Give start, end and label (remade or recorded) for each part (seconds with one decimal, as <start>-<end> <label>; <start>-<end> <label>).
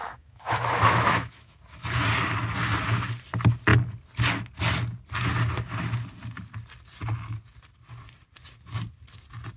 0.0-1.6 remade; 1.6-9.6 recorded